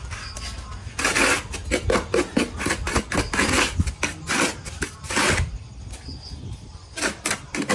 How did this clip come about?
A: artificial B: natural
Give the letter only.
B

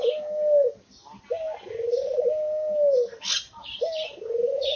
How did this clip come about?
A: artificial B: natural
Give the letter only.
B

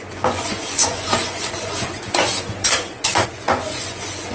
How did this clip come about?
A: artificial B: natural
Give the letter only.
A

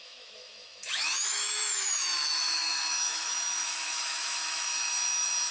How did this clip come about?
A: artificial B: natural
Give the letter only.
A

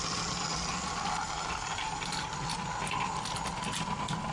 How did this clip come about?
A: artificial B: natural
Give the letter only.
B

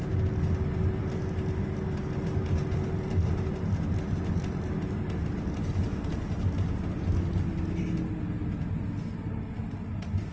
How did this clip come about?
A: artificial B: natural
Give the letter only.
B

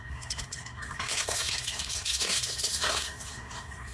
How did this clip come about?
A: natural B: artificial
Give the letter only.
B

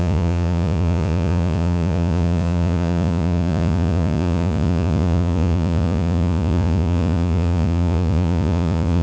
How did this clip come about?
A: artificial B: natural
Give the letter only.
A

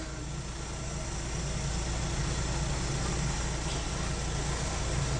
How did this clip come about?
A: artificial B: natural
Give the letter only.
B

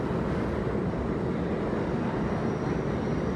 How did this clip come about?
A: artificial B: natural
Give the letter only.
B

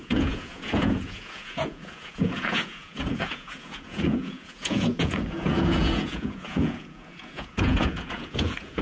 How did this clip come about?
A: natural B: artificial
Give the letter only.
B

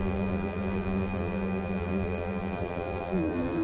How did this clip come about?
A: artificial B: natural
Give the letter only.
A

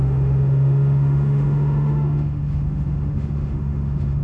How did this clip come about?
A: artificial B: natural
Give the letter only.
A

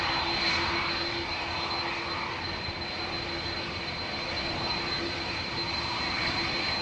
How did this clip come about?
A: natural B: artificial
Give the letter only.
A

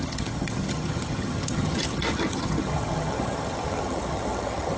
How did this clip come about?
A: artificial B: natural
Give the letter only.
A